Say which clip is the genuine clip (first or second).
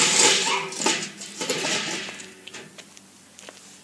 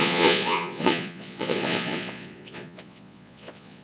first